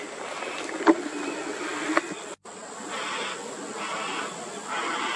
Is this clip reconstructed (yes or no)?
no